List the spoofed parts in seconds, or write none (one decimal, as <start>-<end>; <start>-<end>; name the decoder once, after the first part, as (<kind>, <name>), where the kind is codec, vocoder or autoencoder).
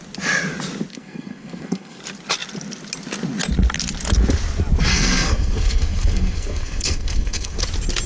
0.9-2.0 (codec, SNAC); 4.9-7.6